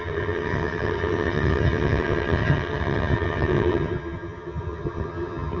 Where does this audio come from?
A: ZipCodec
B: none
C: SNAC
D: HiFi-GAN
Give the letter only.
D